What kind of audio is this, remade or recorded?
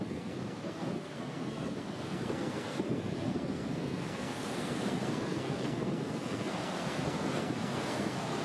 remade